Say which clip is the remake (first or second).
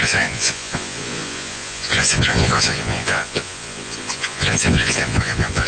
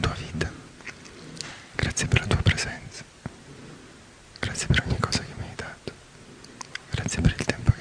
first